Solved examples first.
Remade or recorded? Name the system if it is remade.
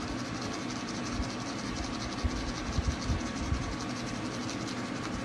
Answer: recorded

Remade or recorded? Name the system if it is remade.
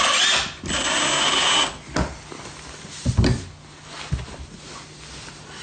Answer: recorded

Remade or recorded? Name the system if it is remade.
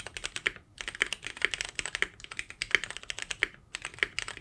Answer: recorded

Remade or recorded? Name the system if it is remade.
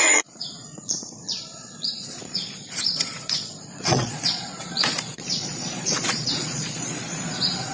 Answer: remade, vocoder, Vocos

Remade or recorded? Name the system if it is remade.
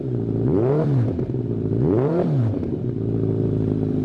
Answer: remade, vocoder, BigVGAN v2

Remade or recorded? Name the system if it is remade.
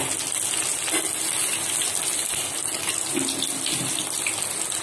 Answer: recorded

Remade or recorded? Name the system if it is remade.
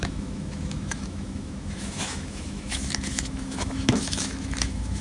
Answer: remade, autoencoder, DAC-VAE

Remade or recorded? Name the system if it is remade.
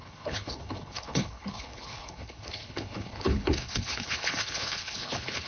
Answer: remade, codec, HILCodec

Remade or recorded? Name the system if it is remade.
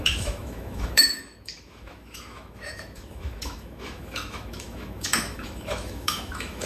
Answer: remade, autoencoder, DAC-VAE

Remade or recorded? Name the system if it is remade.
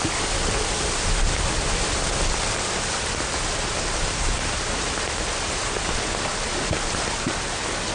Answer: recorded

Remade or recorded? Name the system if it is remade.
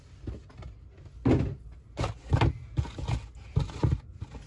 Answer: recorded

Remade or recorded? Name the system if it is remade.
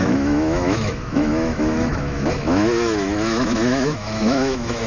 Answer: remade, autoencoder, DAC-VAE